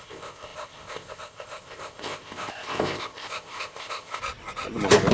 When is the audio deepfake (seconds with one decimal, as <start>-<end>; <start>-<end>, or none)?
0.0-4.2

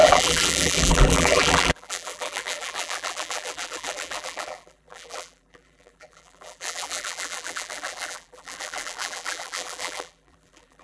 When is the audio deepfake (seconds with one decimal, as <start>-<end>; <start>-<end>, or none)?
0.0-10.8

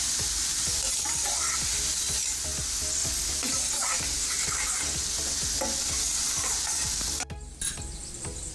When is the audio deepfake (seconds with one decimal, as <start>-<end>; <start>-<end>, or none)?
none

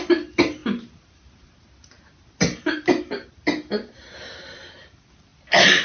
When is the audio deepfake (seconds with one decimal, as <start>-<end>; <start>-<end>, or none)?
none